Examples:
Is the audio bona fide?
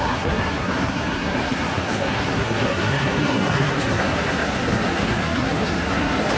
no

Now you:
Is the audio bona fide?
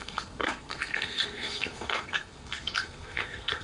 no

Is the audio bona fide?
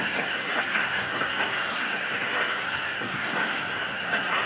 no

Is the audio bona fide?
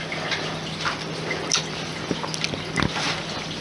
yes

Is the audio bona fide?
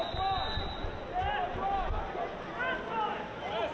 yes